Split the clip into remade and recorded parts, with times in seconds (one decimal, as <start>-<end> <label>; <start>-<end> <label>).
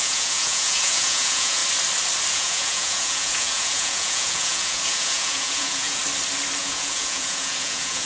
0.0-1.6 remade; 1.6-2.3 recorded; 2.3-6.0 remade; 6.0-6.6 recorded; 6.6-8.1 remade